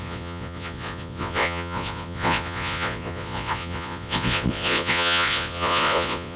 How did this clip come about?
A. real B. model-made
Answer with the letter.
B